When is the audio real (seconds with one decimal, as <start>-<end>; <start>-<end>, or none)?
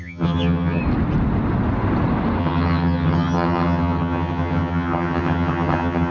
0.8-2.4